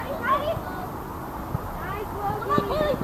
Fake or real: real